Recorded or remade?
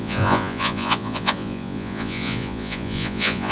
remade